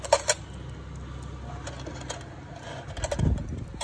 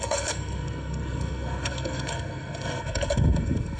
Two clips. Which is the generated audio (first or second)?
second